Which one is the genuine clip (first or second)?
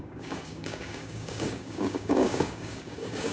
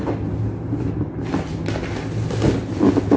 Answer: second